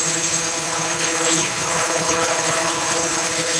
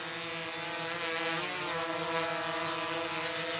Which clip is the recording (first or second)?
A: second